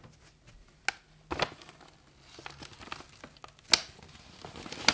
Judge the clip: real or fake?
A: real